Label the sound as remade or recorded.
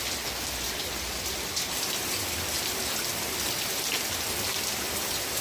recorded